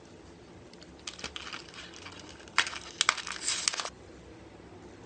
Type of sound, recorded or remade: recorded